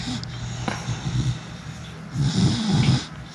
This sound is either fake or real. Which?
real